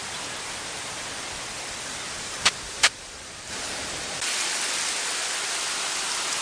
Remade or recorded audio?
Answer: remade